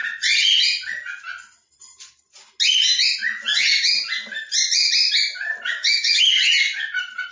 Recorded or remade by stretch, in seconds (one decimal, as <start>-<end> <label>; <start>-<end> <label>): 0.0-5.7 recorded; 5.7-6.3 remade; 6.3-7.3 recorded